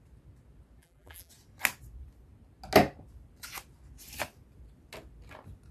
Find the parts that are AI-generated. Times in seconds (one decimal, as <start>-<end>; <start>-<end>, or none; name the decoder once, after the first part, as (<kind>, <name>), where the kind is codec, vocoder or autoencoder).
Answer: 0.8-1.3 (vocoder, BigVGAN v2)